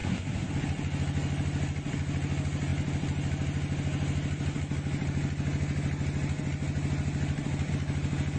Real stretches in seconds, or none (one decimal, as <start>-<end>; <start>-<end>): 0.5-8.4